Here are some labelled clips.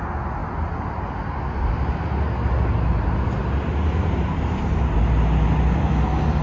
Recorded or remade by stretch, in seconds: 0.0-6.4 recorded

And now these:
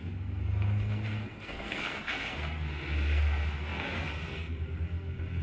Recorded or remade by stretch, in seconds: 0.0-5.4 remade

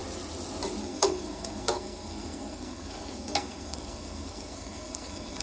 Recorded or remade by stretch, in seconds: 0.0-0.8 recorded; 0.8-5.4 remade

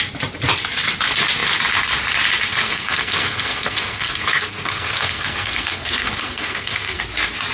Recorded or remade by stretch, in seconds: 0.0-2.5 recorded; 2.5-7.0 remade; 7.0-7.5 recorded

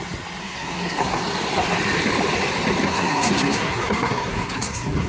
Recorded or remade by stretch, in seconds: 0.0-0.4 recorded; 0.4-1.2 remade; 1.2-2.8 recorded; 2.8-5.1 remade